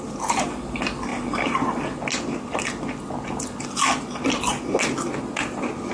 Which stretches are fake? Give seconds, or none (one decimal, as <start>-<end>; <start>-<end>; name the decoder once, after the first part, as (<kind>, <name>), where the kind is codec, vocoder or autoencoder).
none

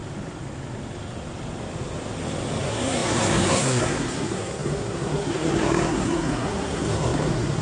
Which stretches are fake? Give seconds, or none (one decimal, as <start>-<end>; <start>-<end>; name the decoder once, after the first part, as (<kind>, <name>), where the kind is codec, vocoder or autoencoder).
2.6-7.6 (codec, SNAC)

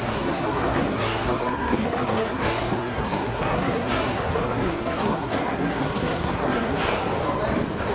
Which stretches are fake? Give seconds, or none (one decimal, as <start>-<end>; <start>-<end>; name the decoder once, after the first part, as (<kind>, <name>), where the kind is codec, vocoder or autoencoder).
0.0-7.0 (codec, SNAC)